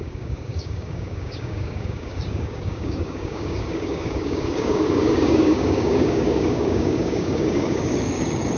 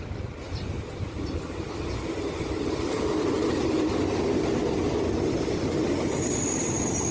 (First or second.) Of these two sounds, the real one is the second